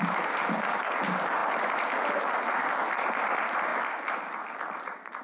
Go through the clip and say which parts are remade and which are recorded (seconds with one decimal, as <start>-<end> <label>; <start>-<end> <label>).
0.0-3.7 remade; 3.7-5.2 recorded

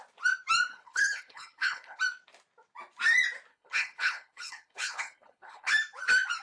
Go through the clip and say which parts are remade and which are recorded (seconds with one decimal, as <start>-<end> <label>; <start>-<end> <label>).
0.0-0.7 recorded; 0.7-2.0 remade; 2.0-3.5 recorded; 3.5-5.7 remade; 5.7-6.4 recorded

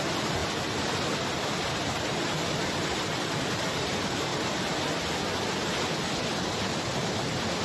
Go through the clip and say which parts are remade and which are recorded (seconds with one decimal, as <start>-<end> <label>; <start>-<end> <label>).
0.0-7.6 recorded

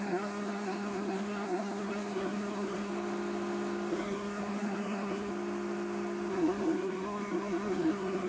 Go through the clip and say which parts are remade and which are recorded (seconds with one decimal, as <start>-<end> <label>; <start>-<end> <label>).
0.0-2.9 remade; 2.9-3.9 recorded; 3.9-5.3 remade; 5.3-6.3 recorded; 6.3-8.3 remade

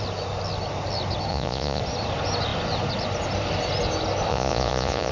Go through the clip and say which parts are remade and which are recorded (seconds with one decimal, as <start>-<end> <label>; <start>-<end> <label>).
0.0-1.3 recorded; 1.3-1.8 remade; 1.8-4.3 recorded; 4.3-5.1 remade

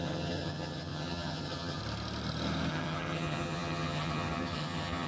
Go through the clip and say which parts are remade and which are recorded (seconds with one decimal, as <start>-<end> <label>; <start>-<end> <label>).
0.0-1.8 remade; 1.8-2.7 recorded; 2.7-5.1 remade

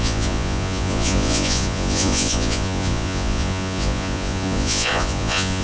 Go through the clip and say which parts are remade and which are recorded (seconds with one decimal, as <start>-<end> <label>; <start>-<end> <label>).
0.0-5.6 remade

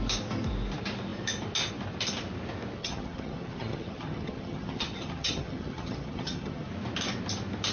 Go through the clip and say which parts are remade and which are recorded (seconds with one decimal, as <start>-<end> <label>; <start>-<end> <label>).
0.0-2.8 recorded; 2.8-6.7 remade; 6.7-7.7 recorded